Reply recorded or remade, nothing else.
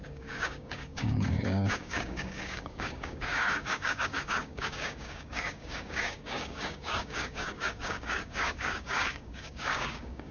remade